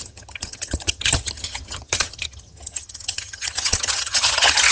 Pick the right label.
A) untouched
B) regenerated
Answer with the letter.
B